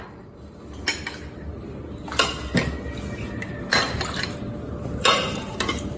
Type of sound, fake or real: real